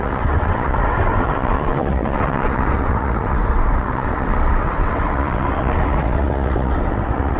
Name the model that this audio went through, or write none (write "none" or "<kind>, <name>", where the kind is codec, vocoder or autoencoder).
vocoder, WaveNeXt